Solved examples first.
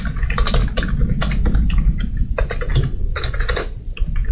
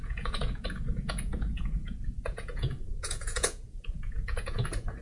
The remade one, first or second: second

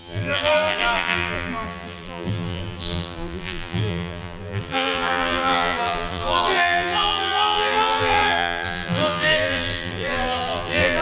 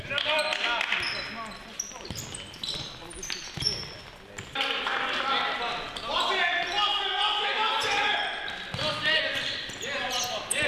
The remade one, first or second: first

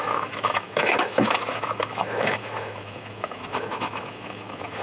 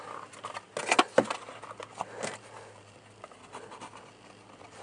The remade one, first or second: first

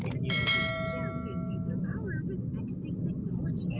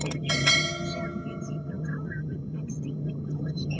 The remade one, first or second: second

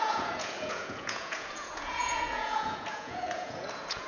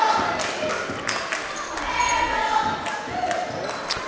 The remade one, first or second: first